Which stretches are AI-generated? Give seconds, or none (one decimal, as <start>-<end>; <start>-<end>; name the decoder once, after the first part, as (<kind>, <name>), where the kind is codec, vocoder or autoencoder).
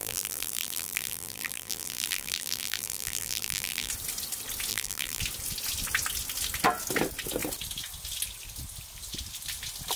0.0-3.9 (vocoder, BigVGAN v2); 4.7-5.2